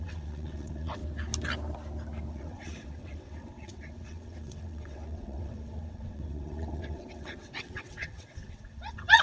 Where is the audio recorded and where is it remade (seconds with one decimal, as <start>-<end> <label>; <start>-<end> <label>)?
0.0-1.0 remade; 1.0-2.3 recorded; 2.3-9.2 remade